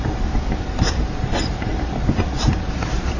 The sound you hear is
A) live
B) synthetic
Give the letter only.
B